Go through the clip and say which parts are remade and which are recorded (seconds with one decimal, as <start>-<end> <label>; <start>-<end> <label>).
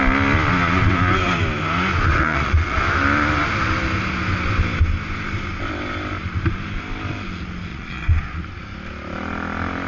0.0-2.1 recorded; 2.1-2.8 remade; 2.8-7.7 recorded; 7.7-8.4 remade; 8.4-9.9 recorded